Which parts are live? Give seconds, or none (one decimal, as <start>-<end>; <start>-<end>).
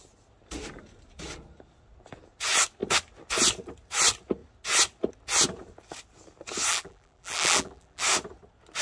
0.0-6.7; 8.0-8.8